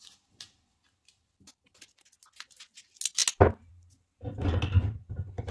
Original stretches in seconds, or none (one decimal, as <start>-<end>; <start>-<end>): 0.0-5.5